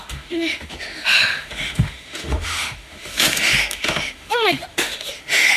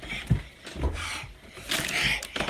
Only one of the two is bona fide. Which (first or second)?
second